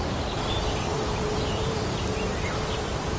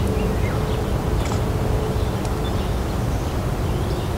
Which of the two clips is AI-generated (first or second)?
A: first